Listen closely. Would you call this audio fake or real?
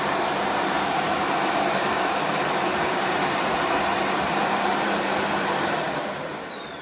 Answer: fake